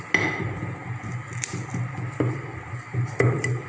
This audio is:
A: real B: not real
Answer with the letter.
A